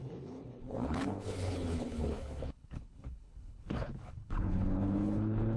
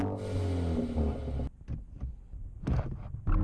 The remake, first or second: first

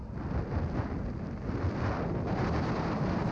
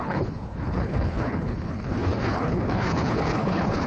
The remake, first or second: second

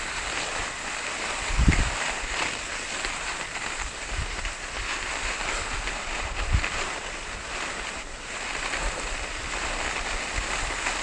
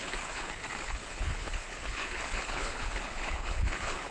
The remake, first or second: second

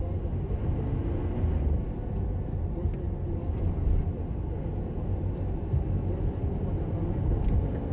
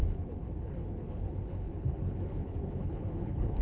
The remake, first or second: second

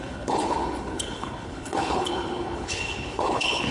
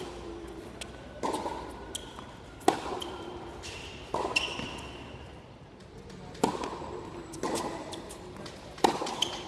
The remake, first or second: first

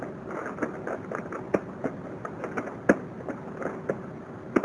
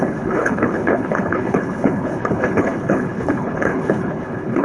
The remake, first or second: second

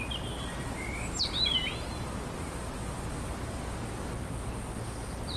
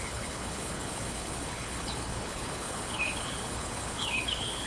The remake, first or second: second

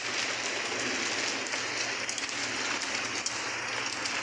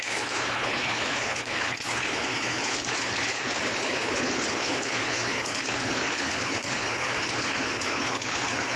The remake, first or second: second